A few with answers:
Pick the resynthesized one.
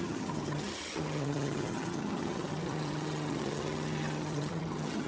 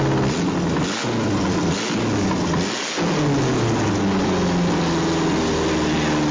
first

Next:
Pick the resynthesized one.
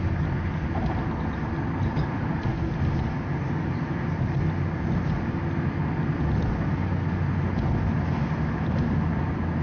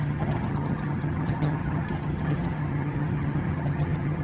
second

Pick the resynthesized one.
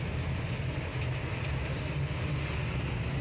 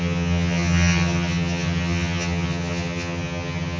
second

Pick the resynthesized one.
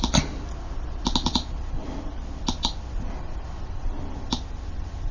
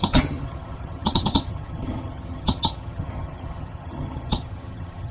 second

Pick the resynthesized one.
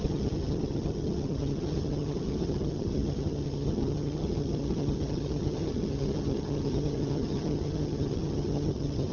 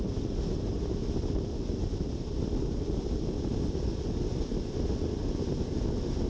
first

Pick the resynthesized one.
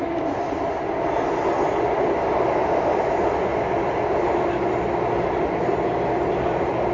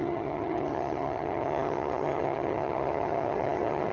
second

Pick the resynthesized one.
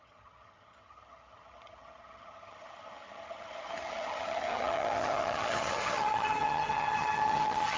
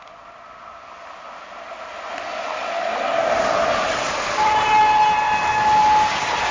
first